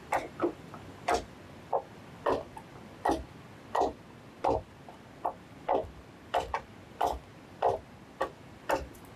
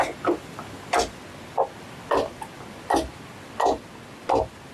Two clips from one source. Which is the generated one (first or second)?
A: first